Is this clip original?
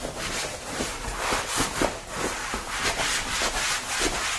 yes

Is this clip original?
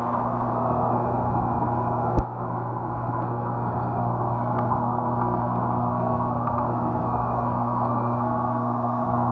no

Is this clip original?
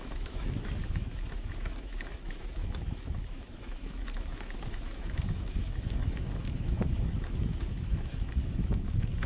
no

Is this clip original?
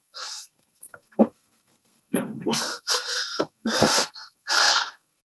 no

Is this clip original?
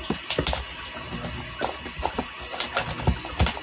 yes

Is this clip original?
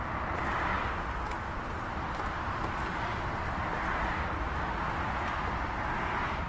yes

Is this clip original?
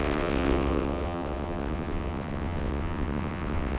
no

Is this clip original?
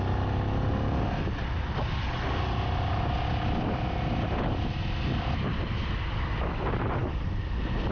yes